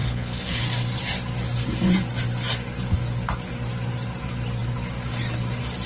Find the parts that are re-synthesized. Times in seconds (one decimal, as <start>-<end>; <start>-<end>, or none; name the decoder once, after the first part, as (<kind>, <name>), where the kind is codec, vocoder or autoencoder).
0.0-0.6 (codec, HILCodec)